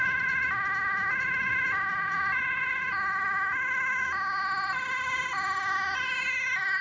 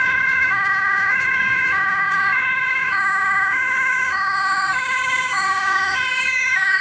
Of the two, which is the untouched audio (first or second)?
first